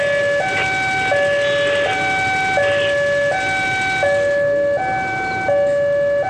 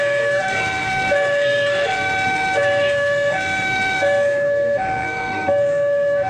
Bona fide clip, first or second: first